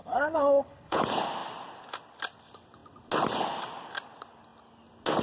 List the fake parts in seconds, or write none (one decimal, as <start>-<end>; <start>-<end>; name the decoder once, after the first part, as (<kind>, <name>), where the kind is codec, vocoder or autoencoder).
0.0-1.0 (codec, HILCodec)